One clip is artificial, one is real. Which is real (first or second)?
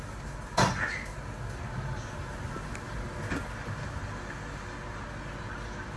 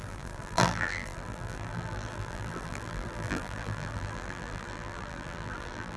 first